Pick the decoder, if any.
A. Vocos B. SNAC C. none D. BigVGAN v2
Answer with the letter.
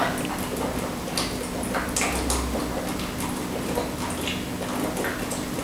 C